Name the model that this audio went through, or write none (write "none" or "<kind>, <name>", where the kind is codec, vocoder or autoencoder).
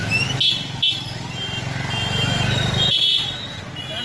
none